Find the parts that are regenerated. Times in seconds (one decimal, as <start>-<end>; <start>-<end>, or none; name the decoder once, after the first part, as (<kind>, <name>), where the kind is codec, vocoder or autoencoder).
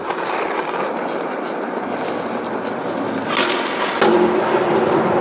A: none